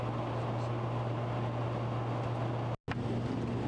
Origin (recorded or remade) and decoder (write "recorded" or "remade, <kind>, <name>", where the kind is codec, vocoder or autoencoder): recorded